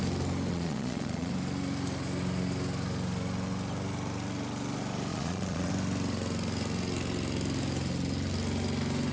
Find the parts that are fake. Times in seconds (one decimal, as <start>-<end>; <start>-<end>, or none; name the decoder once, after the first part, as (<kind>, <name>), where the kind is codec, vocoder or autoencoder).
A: 0.5-1.3 (vocoder, Vocos); 5.1-5.7